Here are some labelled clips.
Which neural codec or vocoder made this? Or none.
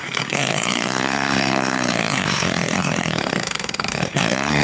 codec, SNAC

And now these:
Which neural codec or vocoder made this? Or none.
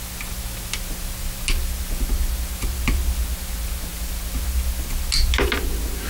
none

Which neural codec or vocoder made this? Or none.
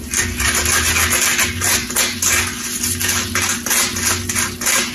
none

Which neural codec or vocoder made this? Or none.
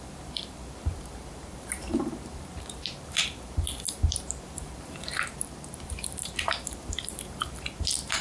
vocoder, BigVGAN v2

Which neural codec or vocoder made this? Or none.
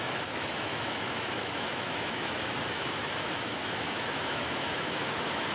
autoencoder, DAC-VAE